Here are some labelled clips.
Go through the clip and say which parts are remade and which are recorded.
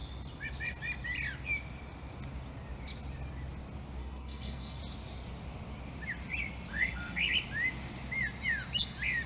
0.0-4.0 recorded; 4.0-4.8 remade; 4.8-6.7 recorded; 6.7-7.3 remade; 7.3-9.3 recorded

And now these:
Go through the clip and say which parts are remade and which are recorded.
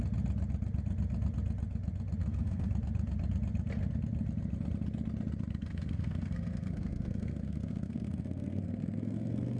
0.0-2.2 recorded; 2.2-2.7 remade; 2.7-5.7 recorded; 5.7-9.6 remade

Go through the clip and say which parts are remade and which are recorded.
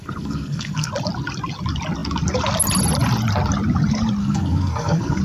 0.0-0.9 remade; 0.9-4.2 recorded; 4.2-5.2 remade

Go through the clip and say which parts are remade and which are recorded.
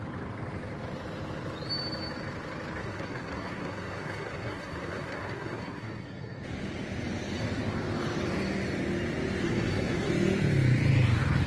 0.0-2.8 recorded; 2.8-6.4 remade; 6.4-9.4 recorded; 9.4-10.1 remade; 10.1-11.5 recorded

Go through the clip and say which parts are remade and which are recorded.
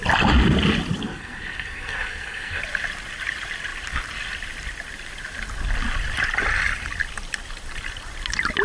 0.0-1.0 recorded; 1.0-2.6 remade; 2.6-8.6 recorded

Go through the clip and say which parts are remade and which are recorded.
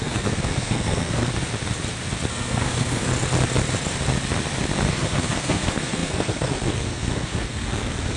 0.0-1.3 remade; 1.3-2.3 recorded; 2.3-3.1 remade; 3.1-4.9 recorded; 4.9-8.2 remade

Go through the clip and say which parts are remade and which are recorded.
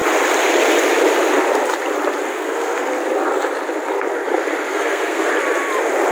0.0-2.3 recorded; 2.3-2.9 remade; 2.9-4.7 recorded; 4.7-5.3 remade; 5.3-6.1 recorded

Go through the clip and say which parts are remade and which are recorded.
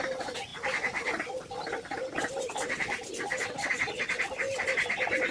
0.0-5.3 recorded